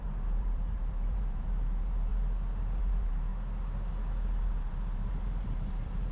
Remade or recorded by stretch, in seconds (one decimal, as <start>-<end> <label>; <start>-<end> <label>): 0.0-2.1 remade; 2.1-2.8 recorded; 2.8-3.3 remade; 3.3-4.4 recorded; 4.4-6.1 remade